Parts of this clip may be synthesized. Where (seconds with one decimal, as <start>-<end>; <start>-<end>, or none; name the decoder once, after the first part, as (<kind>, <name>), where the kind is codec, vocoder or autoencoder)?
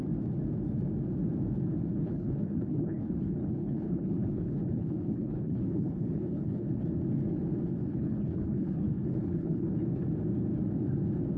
1.9-6.7 (codec, HILCodec); 7.9-9.7